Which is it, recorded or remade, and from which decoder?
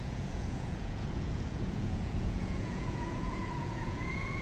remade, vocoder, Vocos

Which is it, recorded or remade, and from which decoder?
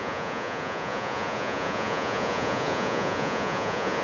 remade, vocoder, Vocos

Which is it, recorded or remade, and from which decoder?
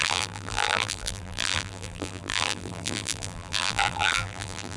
remade, vocoder, BigVGAN v2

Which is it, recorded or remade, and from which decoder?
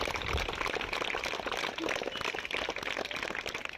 recorded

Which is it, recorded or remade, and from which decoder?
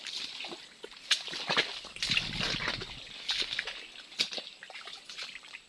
recorded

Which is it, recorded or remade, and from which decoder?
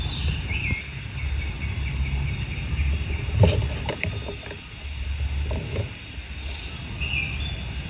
recorded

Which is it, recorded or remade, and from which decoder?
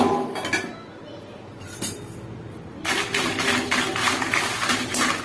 recorded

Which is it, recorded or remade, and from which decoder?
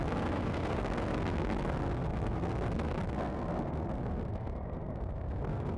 remade, codec, SNAC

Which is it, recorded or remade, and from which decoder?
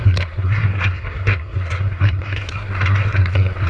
remade, codec, SNAC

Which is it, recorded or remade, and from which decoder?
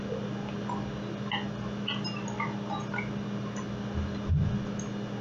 recorded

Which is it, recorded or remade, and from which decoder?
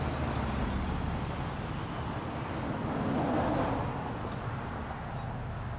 recorded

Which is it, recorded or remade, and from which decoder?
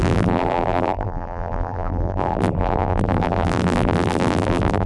remade, vocoder, BigVGAN v2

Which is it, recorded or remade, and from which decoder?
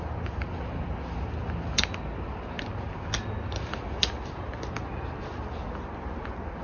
recorded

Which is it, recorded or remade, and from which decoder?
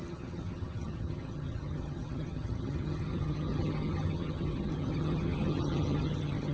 remade, vocoder, HiFi-GAN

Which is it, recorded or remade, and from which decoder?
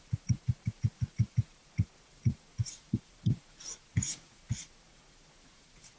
remade, vocoder, Vocos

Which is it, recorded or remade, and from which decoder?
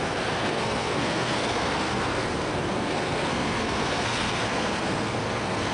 remade, codec, SNAC